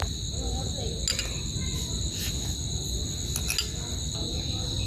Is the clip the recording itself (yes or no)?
yes